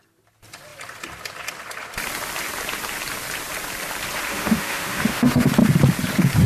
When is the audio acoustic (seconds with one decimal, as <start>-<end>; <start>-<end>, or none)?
0.0-4.3; 5.5-6.5